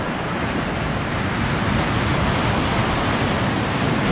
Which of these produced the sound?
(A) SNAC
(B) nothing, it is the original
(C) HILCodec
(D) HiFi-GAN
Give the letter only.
B